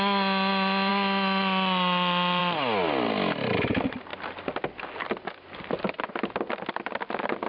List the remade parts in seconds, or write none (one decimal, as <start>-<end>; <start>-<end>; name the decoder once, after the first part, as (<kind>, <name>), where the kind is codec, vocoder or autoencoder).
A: none